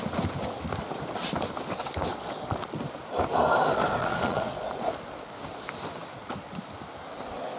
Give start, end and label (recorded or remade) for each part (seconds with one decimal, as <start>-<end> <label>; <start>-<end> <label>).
0.0-2.1 recorded; 2.1-2.6 remade; 2.6-4.0 recorded; 4.0-4.9 remade; 4.9-7.6 recorded